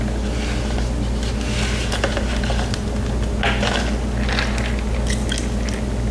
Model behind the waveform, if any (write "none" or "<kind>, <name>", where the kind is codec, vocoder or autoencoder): none